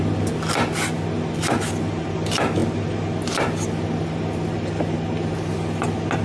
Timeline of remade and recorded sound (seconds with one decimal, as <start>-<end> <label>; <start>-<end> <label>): 0.0-6.2 recorded

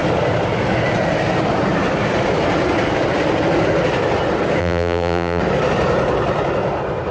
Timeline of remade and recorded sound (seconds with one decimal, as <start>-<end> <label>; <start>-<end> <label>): 0.0-4.6 recorded; 4.6-5.4 remade; 5.4-7.1 recorded

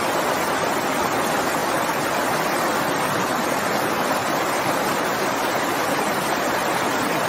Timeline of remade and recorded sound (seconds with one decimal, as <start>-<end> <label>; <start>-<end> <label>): 0.0-4.2 recorded; 4.2-6.4 remade; 6.4-7.3 recorded

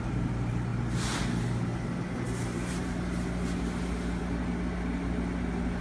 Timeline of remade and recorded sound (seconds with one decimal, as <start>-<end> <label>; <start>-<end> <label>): 0.0-5.8 recorded

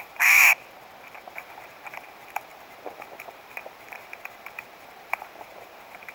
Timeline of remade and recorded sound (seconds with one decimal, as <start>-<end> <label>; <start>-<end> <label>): 0.0-0.4 remade; 0.4-1.3 recorded; 1.3-6.1 remade

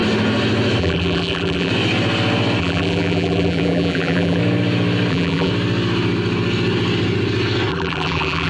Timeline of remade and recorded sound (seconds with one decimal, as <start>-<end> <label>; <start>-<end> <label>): 0.0-0.8 recorded; 0.8-1.7 remade; 1.7-2.6 recorded; 2.6-4.4 remade; 4.4-5.1 recorded; 5.1-5.5 remade; 5.5-7.7 recorded; 7.7-8.5 remade

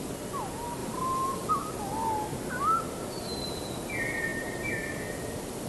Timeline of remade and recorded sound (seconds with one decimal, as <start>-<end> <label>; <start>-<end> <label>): 0.0-4.3 recorded; 4.3-5.0 remade; 5.0-5.7 recorded